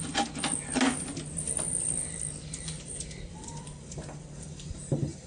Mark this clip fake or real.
real